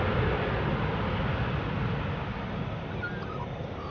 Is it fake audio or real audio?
real